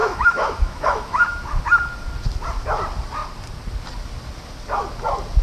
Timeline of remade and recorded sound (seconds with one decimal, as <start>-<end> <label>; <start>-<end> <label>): 0.0-1.6 remade; 1.6-5.4 recorded